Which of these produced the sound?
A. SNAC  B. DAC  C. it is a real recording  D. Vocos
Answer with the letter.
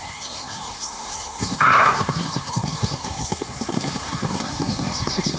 A